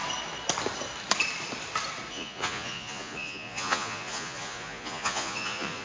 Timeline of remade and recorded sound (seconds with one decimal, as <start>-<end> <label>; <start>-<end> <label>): 0.0-2.1 recorded; 2.1-5.8 remade